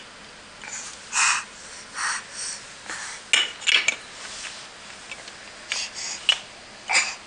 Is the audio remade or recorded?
recorded